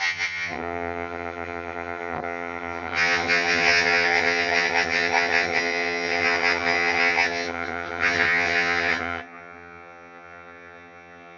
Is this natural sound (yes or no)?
no